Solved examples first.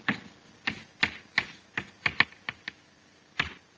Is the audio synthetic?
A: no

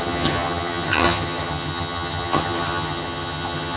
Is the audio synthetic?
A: yes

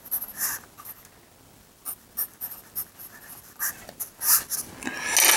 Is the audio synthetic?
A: no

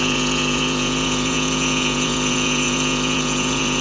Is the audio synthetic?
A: yes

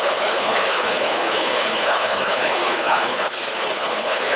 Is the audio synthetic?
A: yes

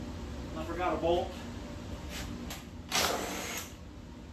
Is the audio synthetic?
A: no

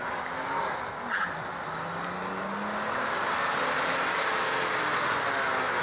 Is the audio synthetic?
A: no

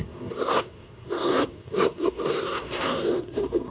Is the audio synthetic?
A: yes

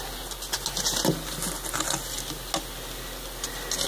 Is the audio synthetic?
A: no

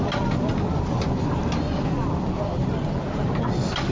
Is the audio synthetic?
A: no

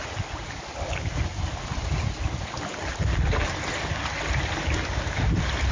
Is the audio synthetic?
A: no